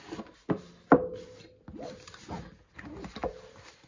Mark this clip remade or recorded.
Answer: recorded